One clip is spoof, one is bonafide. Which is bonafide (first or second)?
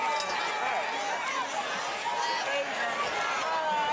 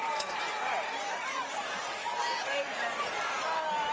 first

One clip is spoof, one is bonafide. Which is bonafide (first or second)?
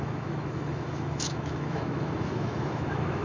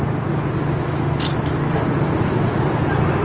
second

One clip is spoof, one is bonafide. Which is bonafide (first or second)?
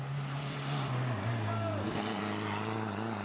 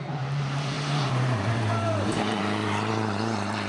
first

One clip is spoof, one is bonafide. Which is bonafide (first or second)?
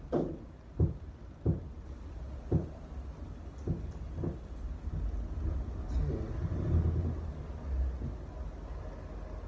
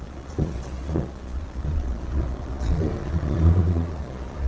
first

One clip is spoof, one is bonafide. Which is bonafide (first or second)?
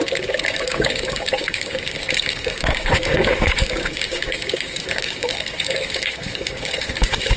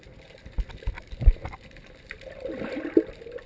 second